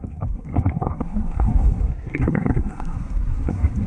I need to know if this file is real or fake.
fake